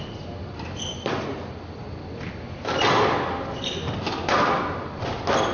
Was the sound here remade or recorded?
recorded